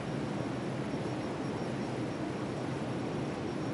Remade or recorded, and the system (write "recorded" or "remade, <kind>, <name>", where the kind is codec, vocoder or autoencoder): recorded